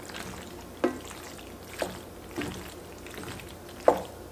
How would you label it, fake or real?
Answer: real